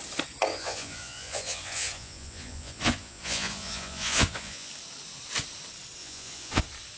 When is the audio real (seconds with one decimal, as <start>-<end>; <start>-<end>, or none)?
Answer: 0.0-0.5; 4.7-6.0; 6.6-7.0

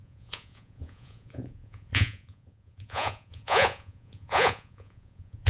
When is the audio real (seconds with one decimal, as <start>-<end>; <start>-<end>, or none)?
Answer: none

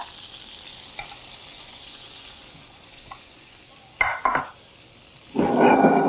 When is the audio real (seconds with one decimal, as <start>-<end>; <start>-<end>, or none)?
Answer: 0.0-1.5; 3.6-6.1

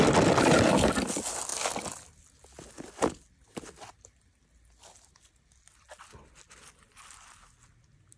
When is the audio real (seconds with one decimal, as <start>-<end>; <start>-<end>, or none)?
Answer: 0.0-8.2

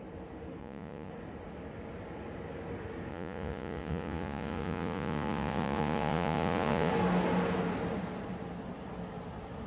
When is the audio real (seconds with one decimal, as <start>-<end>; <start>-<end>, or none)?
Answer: 0.0-0.6; 1.1-3.1; 6.9-9.7

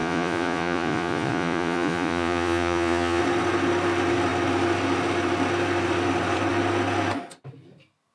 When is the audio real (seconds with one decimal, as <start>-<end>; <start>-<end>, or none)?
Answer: 3.2-8.1